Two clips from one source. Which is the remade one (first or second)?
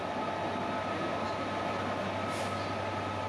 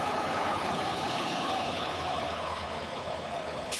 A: second